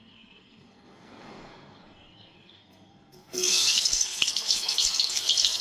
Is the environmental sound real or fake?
fake